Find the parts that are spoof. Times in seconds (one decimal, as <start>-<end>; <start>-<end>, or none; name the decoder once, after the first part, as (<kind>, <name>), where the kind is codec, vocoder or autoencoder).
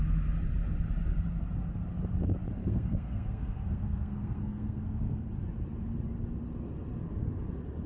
2.6-5.3 (codec, SNAC)